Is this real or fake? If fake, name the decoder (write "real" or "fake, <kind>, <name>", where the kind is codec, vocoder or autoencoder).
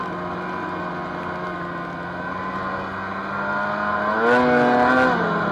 real